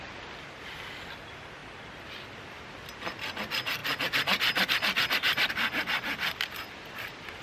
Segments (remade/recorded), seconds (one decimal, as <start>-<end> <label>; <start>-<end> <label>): 0.0-7.4 recorded